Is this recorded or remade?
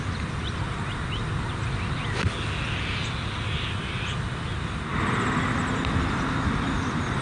recorded